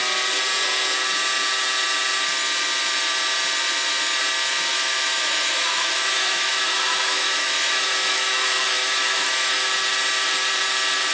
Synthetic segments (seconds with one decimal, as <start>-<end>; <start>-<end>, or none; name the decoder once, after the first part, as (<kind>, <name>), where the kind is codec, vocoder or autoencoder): 4.7-9.7 (autoencoder, DAC-VAE)